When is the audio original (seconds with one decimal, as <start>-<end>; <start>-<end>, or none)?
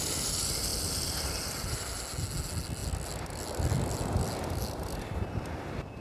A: 0.0-6.0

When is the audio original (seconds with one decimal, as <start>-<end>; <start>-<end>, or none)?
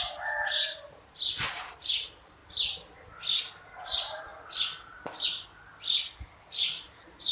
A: 2.4-3.8; 4.3-6.5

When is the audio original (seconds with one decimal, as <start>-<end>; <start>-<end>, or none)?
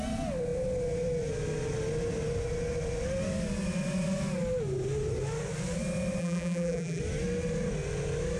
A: 0.0-6.2; 7.0-8.4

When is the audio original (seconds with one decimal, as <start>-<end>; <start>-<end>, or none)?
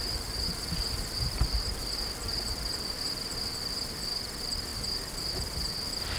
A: none